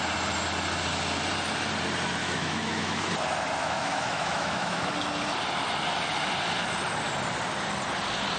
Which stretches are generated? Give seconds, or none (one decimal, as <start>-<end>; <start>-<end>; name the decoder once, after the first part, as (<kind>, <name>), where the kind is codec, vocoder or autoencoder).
2.2-3.1 (autoencoder, DAC-VAE); 3.6-4.9